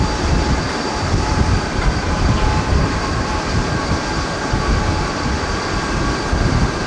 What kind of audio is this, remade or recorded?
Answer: remade